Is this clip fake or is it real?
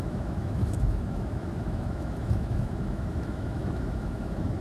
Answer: fake